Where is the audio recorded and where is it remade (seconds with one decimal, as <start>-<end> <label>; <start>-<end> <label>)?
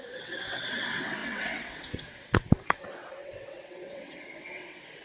0.0-5.0 remade